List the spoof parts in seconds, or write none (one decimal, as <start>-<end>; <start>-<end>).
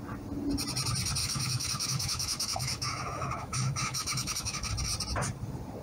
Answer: 1.2-4.7